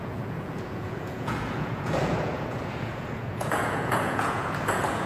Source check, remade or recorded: remade